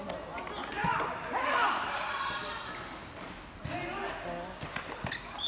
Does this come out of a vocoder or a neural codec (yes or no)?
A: no